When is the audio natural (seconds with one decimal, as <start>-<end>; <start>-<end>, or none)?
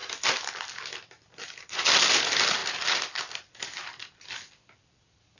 0.0-5.4